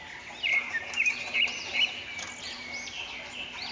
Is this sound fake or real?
real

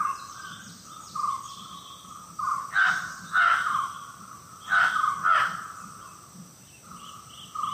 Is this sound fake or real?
real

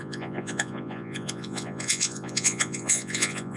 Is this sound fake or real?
fake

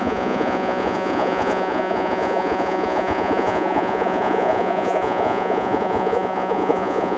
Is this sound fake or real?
fake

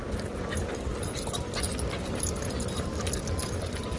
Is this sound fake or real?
real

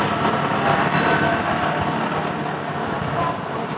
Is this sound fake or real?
real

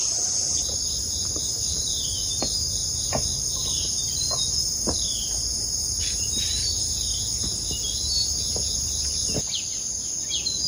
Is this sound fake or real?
real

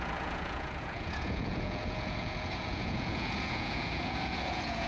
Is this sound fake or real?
fake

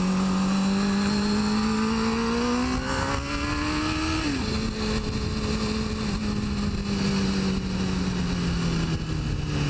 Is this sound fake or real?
real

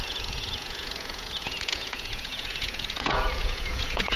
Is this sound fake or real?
fake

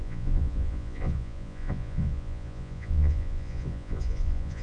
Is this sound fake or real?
fake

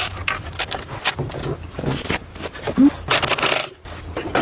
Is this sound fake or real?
real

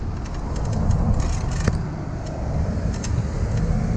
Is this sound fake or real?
real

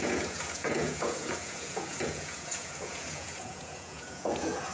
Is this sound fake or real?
fake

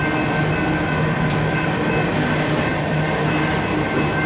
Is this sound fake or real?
real